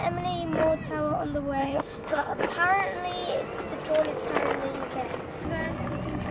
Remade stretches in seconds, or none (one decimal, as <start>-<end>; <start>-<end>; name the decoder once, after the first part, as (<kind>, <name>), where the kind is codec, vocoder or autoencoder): 1.6-2.5 (codec, HILCodec)

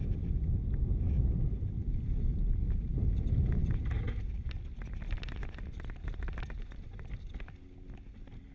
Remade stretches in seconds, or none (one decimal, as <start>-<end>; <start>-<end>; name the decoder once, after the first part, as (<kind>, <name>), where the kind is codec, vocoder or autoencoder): none

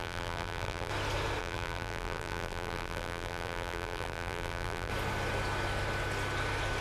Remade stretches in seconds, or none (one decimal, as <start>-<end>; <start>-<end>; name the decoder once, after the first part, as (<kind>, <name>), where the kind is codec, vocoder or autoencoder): 0.0-0.9 (vocoder, BigVGAN v2); 1.4-4.9

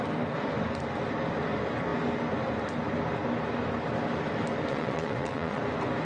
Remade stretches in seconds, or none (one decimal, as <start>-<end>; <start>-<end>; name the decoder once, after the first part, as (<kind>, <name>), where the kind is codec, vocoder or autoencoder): 4.7-5.6 (vocoder, WaveNeXt)

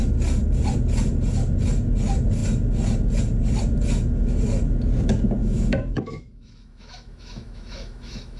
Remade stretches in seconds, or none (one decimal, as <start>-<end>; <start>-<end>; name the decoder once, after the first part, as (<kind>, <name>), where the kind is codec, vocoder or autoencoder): 5.4-8.4 (autoencoder, DAC-VAE)

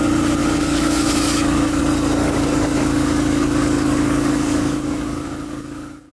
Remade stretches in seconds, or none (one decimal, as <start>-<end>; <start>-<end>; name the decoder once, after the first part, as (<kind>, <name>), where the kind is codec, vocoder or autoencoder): 0.4-1.8 (codec, DAC); 2.2-6.1

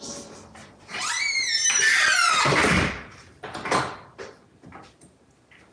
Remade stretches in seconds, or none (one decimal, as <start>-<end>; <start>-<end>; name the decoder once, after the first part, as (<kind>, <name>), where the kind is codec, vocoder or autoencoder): 0.6-1.2 (vocoder, Vocos)

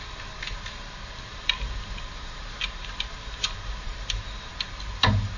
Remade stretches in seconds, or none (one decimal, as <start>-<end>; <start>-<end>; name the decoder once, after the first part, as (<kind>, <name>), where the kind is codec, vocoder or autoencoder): 1.3-4.5 (vocoder, BigVGAN v2)